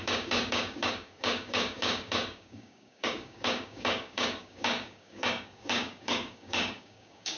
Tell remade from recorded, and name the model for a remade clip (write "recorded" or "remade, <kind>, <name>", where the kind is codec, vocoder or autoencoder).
remade, codec, DAC